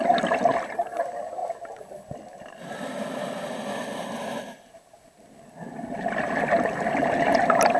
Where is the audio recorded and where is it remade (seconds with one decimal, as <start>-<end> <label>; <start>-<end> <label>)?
0.0-7.8 recorded